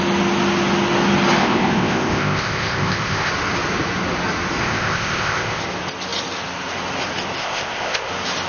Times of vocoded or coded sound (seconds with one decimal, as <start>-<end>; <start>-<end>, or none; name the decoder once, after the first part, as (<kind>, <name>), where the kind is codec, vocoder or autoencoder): 1.4-3.3 (codec, ZipCodec); 4.6-5.6; 7.4-8.1